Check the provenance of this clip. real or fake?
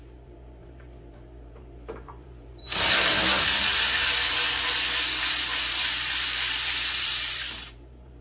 fake